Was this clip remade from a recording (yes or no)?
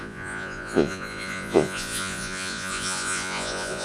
yes